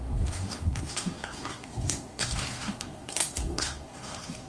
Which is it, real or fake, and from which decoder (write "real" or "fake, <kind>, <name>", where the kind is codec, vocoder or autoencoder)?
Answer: fake, codec, SNAC